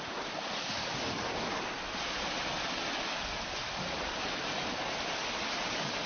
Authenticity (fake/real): real